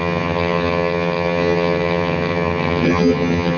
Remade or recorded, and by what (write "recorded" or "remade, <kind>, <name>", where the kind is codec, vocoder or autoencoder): remade, vocoder, HiFi-GAN